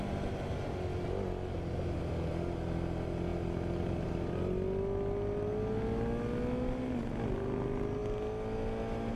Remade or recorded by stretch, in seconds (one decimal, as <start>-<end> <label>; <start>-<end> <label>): 0.0-9.2 recorded

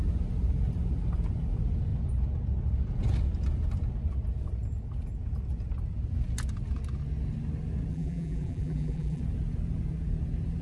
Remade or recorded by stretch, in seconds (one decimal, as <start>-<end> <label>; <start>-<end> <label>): 0.0-7.9 recorded; 7.9-9.2 remade; 9.2-10.6 recorded

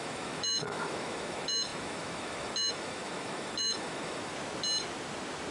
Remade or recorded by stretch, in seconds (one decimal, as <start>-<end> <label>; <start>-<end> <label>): 0.0-4.3 remade; 4.3-5.5 recorded

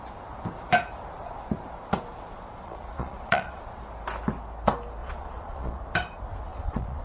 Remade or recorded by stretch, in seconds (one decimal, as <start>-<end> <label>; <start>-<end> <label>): 0.0-2.3 recorded; 2.3-3.8 remade; 3.8-5.0 recorded; 5.0-5.8 remade; 5.8-6.5 recorded; 6.5-7.0 remade

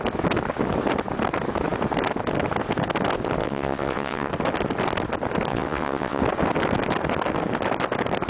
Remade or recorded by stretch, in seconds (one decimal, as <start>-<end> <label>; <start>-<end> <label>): 0.0-3.4 recorded; 3.4-4.3 remade; 4.3-5.5 recorded; 5.5-6.2 remade; 6.2-8.3 recorded

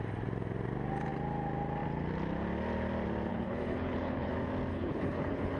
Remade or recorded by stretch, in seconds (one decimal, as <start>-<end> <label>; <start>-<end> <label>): 0.0-3.3 recorded; 3.3-4.3 remade; 4.3-4.7 recorded; 4.7-5.6 remade

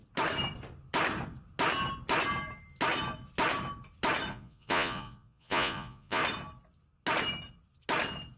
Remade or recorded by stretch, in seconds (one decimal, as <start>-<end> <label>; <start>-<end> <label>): 0.0-4.3 recorded; 4.3-6.2 remade; 6.2-8.4 recorded

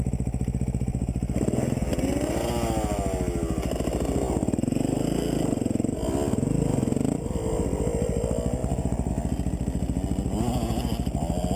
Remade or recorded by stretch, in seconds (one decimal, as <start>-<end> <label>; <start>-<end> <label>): 0.0-8.6 recorded; 8.6-9.1 remade; 9.1-11.6 recorded